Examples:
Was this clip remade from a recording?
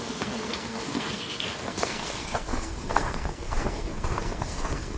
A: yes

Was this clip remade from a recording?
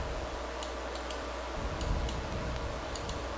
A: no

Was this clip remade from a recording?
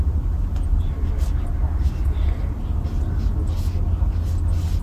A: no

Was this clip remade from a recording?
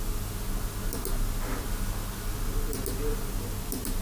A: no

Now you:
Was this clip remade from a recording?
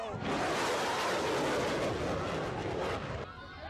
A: no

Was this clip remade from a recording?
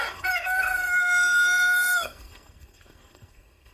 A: yes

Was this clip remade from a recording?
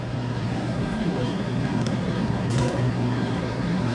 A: yes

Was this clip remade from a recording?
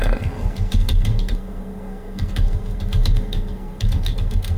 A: yes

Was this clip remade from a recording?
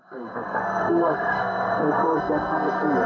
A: yes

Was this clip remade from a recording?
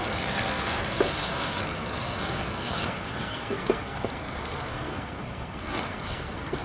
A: yes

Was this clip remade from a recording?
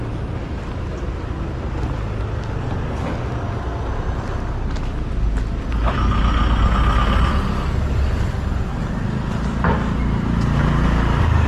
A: no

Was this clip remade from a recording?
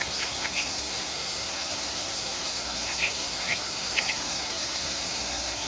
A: yes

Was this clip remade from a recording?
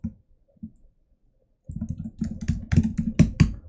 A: no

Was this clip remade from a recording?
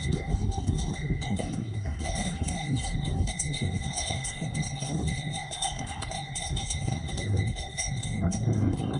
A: yes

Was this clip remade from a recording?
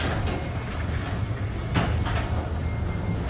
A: no